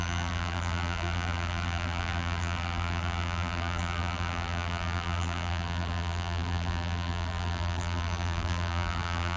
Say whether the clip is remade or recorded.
remade